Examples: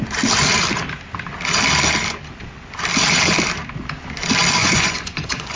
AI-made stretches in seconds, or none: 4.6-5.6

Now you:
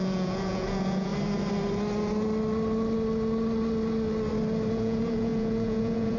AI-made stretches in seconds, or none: 0.0-1.1; 4.7-6.2

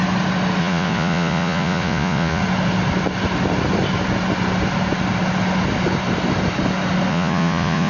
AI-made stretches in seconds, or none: 0.6-2.4; 7.1-7.9

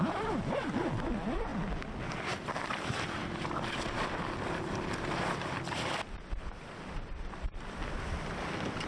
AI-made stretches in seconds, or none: none

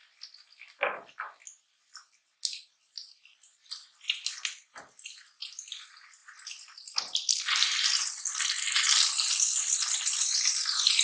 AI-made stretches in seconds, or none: none

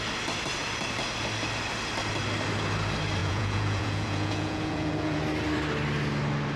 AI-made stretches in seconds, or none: 3.2-5.2